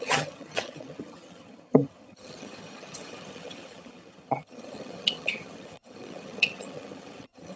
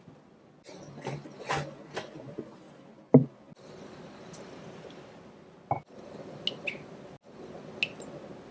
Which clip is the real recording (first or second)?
second